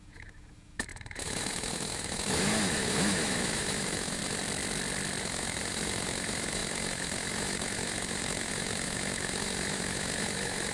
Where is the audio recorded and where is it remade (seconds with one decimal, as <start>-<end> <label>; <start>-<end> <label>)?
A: 0.0-4.2 remade; 4.2-5.2 recorded; 5.2-10.7 remade